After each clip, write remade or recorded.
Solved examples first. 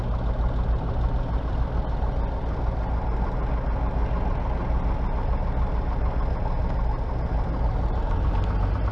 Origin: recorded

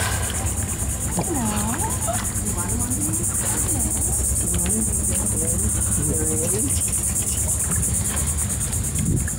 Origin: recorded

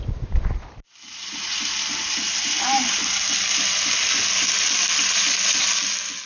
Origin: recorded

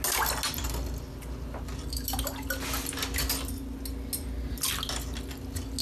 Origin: recorded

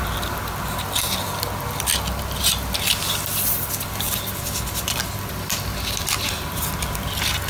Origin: recorded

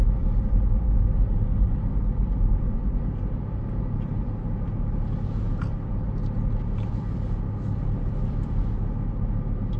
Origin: recorded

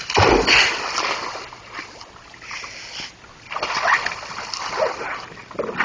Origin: recorded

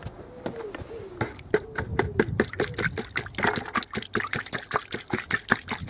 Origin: recorded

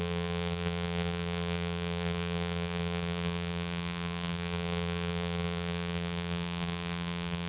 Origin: remade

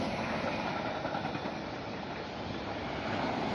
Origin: recorded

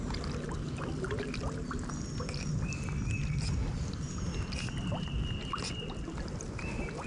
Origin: recorded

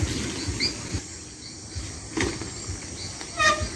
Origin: recorded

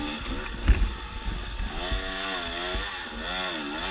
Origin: recorded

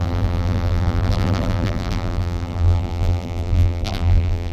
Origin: remade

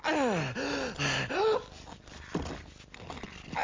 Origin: recorded